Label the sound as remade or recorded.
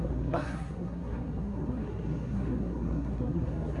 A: remade